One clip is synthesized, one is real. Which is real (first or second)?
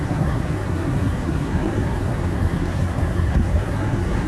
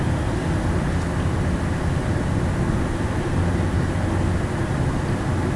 second